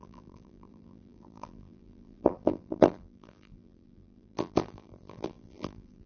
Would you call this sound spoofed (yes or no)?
yes